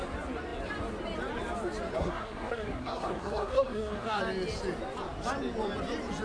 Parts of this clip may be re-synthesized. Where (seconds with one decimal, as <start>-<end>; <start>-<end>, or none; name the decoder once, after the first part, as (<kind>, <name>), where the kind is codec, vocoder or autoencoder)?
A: 2.0-4.2 (codec, SNAC)